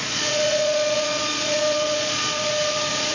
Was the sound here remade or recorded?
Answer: remade